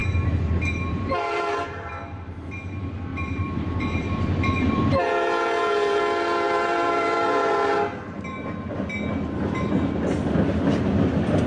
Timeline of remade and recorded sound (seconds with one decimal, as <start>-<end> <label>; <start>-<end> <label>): 0.0-1.9 remade; 1.9-3.1 recorded; 3.1-7.7 remade; 7.7-11.5 recorded